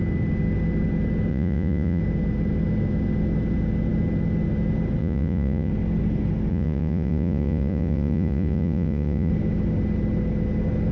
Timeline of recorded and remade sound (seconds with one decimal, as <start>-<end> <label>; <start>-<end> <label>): 0.0-1.3 recorded; 1.3-2.0 remade; 2.0-5.0 recorded; 5.0-5.7 remade; 5.7-6.5 recorded; 6.5-9.3 remade; 9.3-10.9 recorded